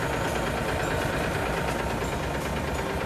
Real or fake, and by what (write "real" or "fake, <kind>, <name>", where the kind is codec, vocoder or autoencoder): real